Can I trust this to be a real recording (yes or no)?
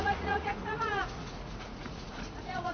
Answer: no